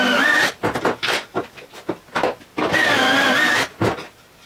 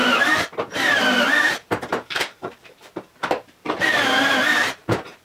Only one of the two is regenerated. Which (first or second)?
second